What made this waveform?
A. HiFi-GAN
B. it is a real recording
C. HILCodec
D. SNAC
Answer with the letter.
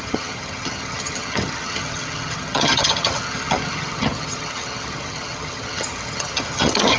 A